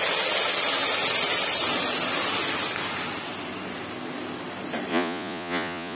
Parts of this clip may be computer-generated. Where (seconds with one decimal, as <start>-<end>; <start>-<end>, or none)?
4.9-6.0